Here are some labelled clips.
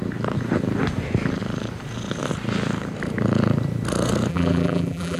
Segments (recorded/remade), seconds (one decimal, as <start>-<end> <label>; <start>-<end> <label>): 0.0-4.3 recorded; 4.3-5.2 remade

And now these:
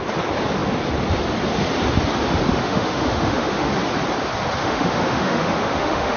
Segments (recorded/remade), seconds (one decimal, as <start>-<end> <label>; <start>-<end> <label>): 0.0-2.5 recorded; 2.5-3.7 remade; 3.7-4.6 recorded; 4.6-6.2 remade

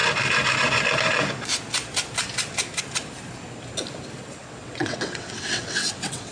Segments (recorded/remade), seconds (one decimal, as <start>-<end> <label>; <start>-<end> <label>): 0.0-4.4 recorded; 4.4-6.3 remade

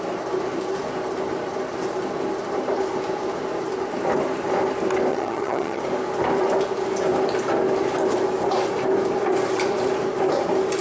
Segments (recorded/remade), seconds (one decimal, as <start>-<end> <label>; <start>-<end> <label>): 0.0-5.1 recorded; 5.1-5.8 remade; 5.8-10.8 recorded

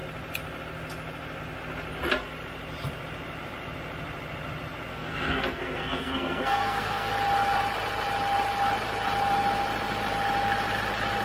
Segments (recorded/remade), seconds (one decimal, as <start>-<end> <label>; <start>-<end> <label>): 0.0-4.9 recorded; 4.9-7.1 remade; 7.1-11.2 recorded

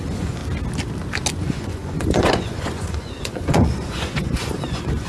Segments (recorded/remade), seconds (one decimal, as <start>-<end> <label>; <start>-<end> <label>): 0.0-0.4 remade; 0.4-1.4 recorded; 1.4-5.1 remade